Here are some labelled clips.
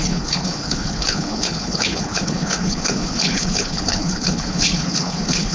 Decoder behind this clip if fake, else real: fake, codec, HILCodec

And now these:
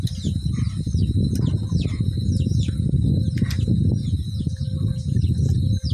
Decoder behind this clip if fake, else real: real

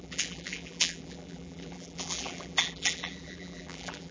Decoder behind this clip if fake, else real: fake, vocoder, BigVGAN v2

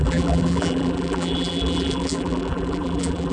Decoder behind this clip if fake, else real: fake, vocoder, BigVGAN v2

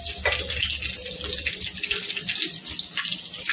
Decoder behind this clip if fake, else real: real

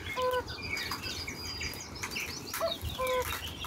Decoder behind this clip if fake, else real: real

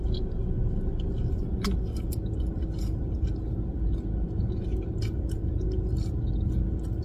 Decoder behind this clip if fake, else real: real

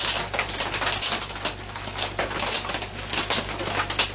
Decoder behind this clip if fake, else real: real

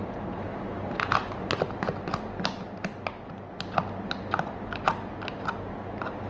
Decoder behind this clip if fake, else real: real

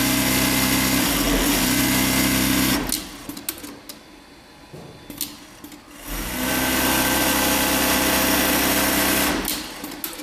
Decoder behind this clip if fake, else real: real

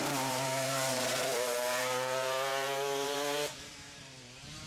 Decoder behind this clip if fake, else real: fake, vocoder, BigVGAN v2